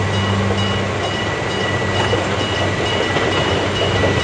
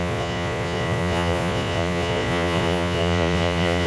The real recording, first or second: first